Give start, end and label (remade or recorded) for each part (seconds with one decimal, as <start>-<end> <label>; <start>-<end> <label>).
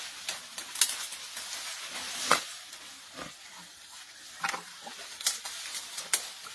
0.0-6.5 recorded